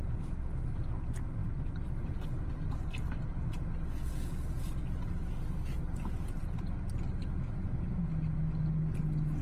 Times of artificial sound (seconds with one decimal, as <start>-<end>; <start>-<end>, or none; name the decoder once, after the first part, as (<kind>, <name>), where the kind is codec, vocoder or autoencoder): none